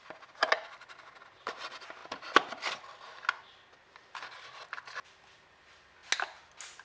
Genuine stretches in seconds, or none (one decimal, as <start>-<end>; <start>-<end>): 0.0-6.8